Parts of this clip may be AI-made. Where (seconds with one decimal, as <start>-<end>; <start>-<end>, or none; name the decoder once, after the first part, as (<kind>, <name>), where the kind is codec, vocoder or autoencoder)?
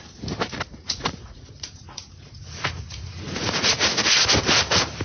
0.7-3.7 (vocoder, Vocos)